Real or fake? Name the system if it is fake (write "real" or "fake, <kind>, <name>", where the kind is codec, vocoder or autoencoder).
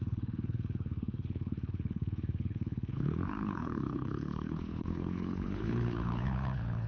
fake, codec, HILCodec